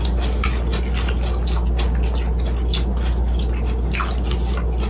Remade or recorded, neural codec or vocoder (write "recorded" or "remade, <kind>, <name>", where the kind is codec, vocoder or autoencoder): recorded